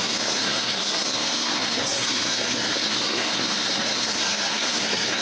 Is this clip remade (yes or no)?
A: yes